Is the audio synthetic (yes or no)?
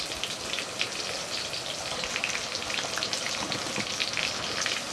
no